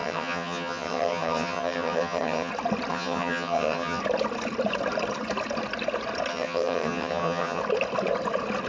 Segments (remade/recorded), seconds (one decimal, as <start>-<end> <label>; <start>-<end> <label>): 0.0-2.5 remade; 2.5-2.9 recorded; 2.9-4.0 remade; 4.0-6.3 recorded; 6.3-7.6 remade; 7.6-8.7 recorded